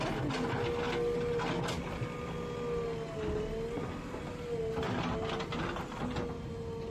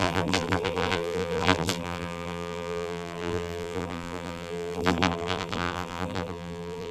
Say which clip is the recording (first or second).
first